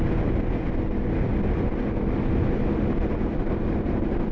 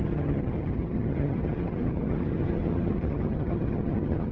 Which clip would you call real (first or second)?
first